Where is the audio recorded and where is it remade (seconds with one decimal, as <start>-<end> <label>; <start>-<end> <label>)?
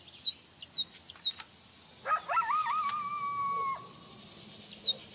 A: 0.0-5.1 recorded